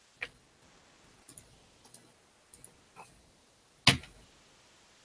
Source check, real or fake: real